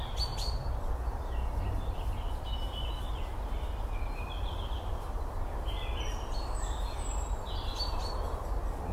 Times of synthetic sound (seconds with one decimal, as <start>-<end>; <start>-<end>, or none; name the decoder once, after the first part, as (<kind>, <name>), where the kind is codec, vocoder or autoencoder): none